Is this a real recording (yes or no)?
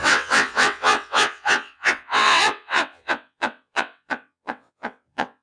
no